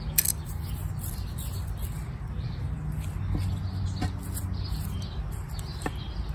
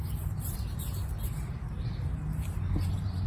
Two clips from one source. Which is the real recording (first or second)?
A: first